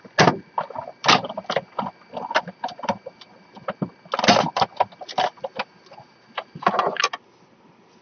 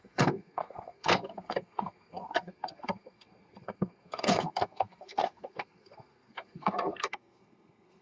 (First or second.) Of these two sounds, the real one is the first